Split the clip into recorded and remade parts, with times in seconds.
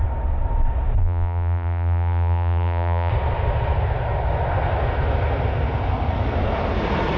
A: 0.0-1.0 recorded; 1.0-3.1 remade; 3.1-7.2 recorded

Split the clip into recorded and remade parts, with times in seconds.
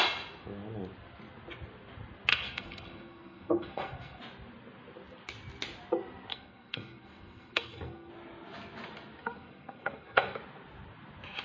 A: 0.0-2.3 recorded; 2.3-4.2 remade; 4.2-6.3 recorded; 6.3-8.1 remade; 8.1-9.2 recorded; 9.2-10.4 remade; 10.4-11.4 recorded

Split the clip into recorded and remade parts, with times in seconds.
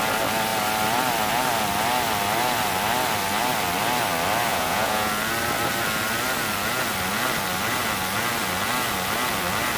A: 0.0-4.5 recorded; 4.5-5.1 remade; 5.1-9.8 recorded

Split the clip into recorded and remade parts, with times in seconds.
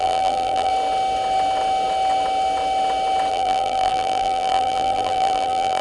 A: 0.0-0.7 remade; 0.7-3.3 recorded; 3.3-5.8 remade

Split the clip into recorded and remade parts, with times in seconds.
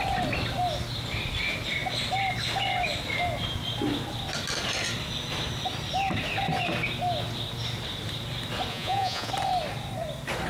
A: 0.0-8.7 recorded; 8.7-9.3 remade; 9.3-10.5 recorded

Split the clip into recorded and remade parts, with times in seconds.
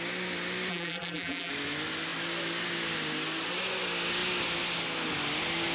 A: 0.0-0.7 recorded; 0.7-1.5 remade; 1.5-5.7 recorded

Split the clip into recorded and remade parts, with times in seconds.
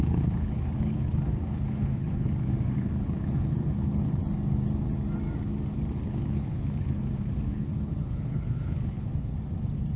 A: 0.0-4.2 remade; 4.2-5.9 recorded; 5.9-9.3 remade; 9.3-10.0 recorded